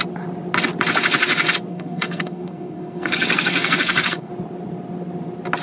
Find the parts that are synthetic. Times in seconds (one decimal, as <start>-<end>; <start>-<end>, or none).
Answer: 1.7-4.3